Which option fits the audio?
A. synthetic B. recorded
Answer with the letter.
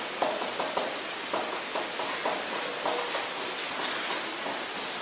B